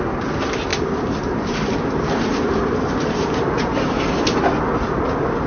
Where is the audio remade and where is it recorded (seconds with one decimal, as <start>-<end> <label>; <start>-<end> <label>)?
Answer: 0.0-0.7 recorded; 0.7-4.0 remade; 4.0-5.5 recorded